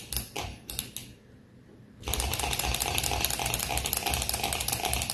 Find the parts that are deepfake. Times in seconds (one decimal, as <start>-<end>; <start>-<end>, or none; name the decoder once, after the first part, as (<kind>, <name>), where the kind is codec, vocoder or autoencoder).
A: none